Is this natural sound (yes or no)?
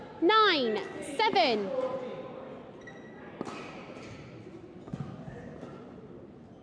yes